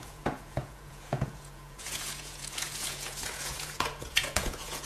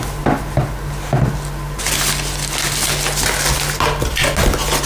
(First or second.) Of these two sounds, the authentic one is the second